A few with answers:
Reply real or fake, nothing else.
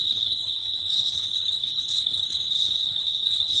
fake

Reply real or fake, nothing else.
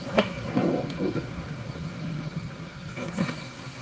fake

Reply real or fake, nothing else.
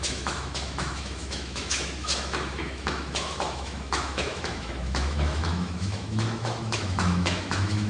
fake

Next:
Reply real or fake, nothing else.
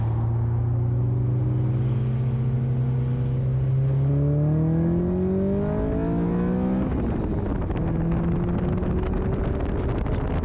real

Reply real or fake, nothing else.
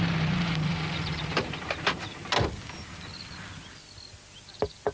real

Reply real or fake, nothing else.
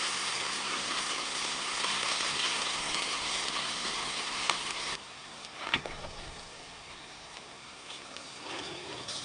fake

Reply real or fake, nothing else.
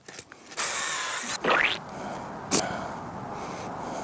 real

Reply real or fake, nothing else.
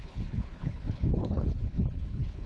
fake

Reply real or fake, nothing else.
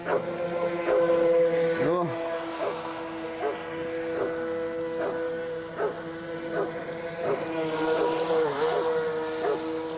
real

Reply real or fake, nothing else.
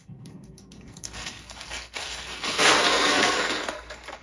fake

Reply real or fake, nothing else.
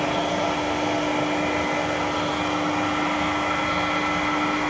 real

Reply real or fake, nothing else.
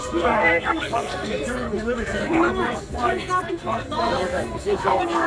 fake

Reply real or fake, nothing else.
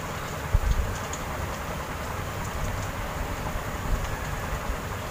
real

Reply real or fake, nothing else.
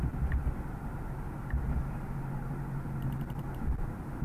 real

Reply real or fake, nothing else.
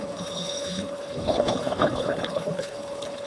fake